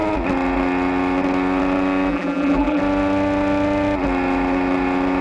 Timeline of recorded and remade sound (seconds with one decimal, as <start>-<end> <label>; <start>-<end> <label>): 0.0-2.1 recorded; 2.1-2.8 remade; 2.8-5.2 recorded